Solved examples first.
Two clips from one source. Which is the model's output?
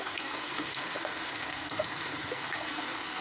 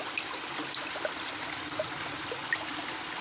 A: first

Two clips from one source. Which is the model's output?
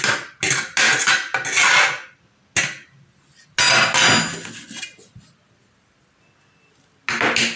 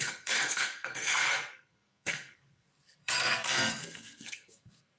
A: second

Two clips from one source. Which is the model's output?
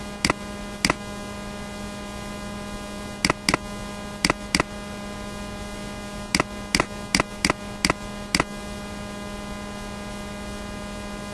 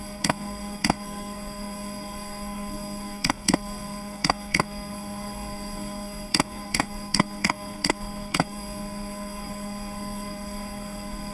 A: second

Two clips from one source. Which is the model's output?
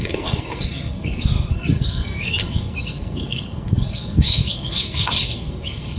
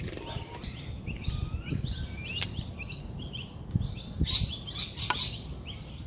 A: first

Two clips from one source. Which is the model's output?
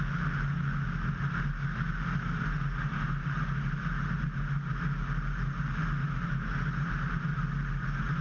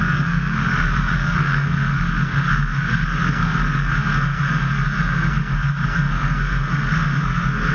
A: second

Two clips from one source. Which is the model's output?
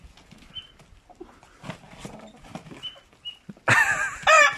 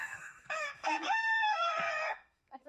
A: second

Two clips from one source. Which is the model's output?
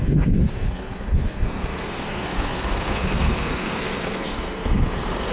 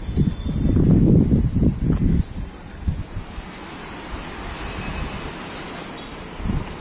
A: first